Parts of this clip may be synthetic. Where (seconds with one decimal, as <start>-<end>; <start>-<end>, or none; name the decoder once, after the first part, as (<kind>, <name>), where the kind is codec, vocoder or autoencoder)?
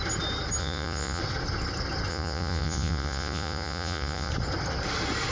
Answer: 0.6-1.2 (vocoder, Vocos); 2.1-4.3